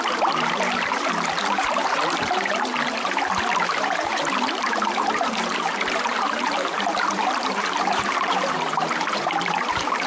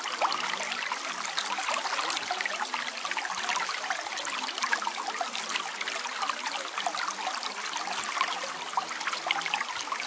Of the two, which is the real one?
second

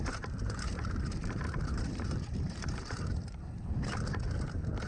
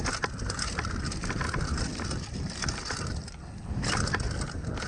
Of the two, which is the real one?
second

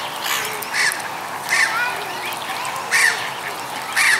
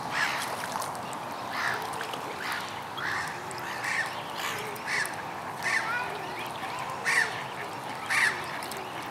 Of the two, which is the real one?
first